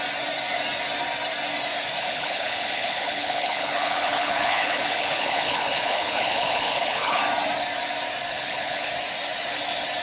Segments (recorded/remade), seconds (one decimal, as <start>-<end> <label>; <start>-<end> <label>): 0.0-2.0 recorded; 2.0-7.2 remade; 7.2-8.3 recorded; 8.3-8.9 remade; 8.9-10.0 recorded